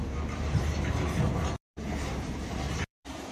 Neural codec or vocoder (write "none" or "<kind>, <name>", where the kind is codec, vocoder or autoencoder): vocoder, BigVGAN v2